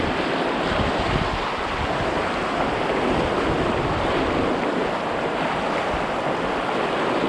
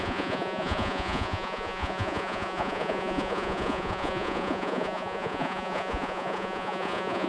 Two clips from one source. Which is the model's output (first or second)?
second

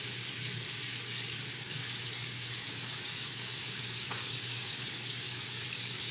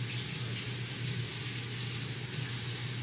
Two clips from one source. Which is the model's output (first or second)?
first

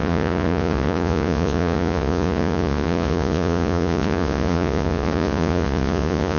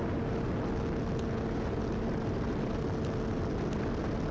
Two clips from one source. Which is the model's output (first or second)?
first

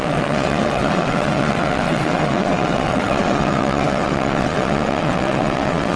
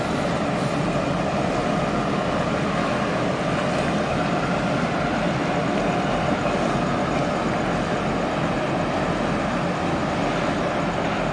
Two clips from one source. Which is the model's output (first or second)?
first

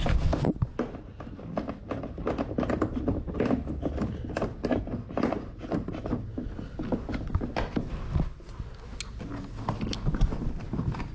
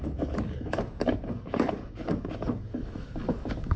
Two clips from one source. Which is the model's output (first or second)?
second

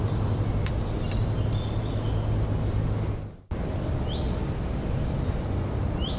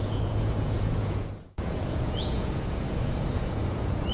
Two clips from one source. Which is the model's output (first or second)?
second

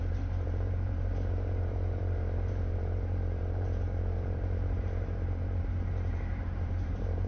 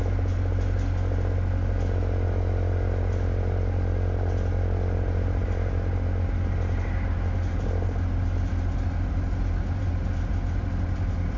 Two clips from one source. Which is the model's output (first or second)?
first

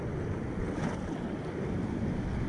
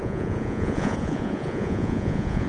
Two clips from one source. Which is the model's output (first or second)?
second